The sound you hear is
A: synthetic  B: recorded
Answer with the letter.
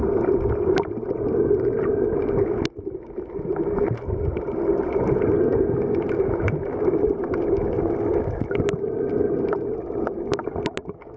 B